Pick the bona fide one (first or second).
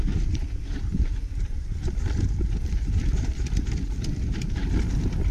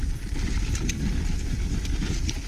second